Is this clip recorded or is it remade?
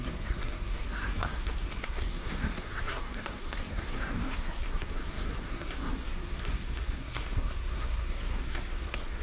remade